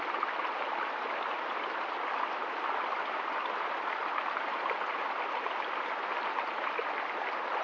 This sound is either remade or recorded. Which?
recorded